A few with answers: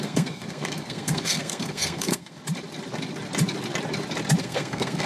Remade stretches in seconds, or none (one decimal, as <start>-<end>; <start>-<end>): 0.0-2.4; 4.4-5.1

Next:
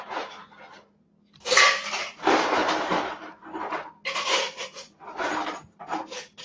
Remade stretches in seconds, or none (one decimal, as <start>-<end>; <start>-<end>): 2.6-3.6; 4.6-5.8

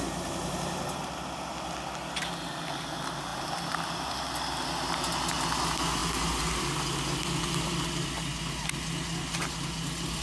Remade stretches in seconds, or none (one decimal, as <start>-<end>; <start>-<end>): 3.3-3.9

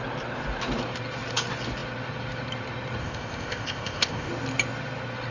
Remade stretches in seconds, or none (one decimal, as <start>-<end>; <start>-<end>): 3.0-4.3

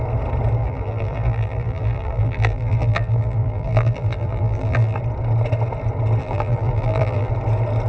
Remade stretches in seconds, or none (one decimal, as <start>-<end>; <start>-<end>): 0.6-5.0; 6.2-7.3

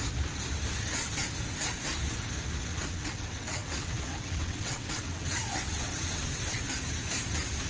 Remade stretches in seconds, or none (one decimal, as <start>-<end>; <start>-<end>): 2.7-6.6

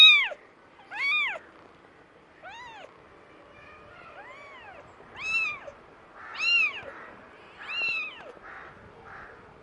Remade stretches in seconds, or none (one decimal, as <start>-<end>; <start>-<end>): none

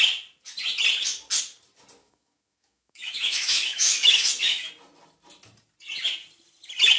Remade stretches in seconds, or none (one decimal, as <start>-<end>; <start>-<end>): 2.0-4.7